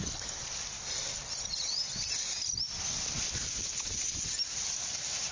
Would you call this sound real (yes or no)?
yes